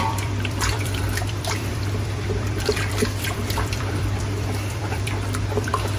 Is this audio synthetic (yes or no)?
yes